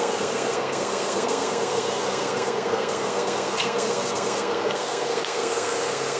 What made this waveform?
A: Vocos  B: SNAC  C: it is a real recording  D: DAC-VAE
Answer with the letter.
B